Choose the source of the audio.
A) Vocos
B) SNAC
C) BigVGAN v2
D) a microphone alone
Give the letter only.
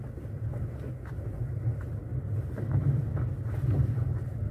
D